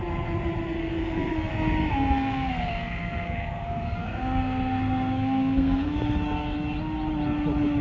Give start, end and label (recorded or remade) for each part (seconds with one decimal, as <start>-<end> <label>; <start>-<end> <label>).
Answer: 0.0-0.8 recorded; 0.8-1.5 remade; 1.5-1.9 recorded; 1.9-6.0 remade; 6.0-7.8 recorded